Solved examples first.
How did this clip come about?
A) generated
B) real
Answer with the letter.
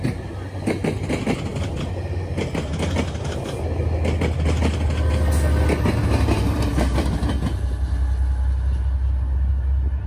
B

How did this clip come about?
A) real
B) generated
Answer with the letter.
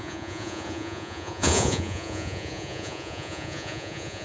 B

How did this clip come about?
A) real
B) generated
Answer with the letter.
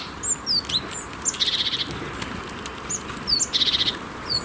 A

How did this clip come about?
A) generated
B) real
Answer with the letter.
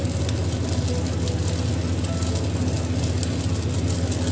B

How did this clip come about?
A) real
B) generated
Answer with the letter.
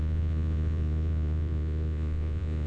B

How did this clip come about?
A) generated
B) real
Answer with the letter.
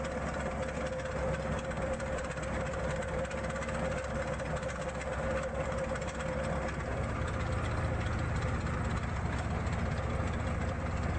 B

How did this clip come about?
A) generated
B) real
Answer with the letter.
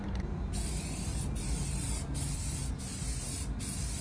B